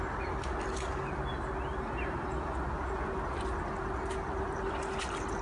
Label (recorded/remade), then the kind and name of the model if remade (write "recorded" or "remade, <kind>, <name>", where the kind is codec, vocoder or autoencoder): recorded